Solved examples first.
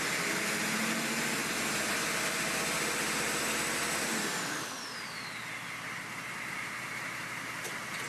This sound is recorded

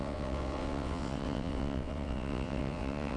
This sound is remade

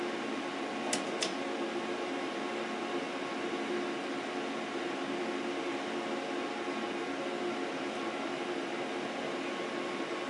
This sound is recorded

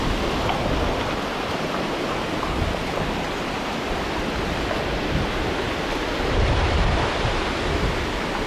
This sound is recorded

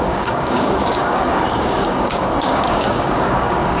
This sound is remade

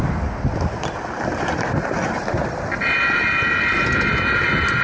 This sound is recorded